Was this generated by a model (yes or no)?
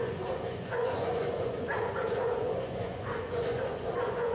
yes